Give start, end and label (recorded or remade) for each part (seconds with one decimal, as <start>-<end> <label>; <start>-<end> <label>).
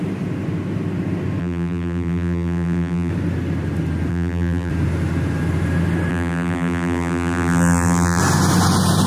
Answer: 0.0-1.4 recorded; 1.4-3.1 remade; 3.1-4.1 recorded; 4.1-4.7 remade; 4.7-6.1 recorded; 6.1-8.2 remade; 8.2-9.1 recorded